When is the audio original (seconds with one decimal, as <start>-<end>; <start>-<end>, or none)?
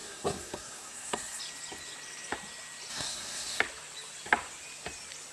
1.4-2.9; 3.6-5.3